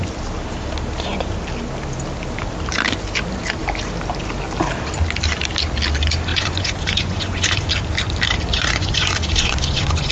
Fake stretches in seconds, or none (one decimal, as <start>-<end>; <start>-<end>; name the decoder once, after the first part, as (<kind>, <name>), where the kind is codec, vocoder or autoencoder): 6.3-7.7 (vocoder, Vocos); 8.5-10.1